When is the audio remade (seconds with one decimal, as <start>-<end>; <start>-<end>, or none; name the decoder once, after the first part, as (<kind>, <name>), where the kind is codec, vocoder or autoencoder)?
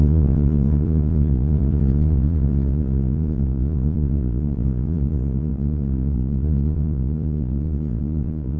0.0-8.6 (vocoder, Vocos)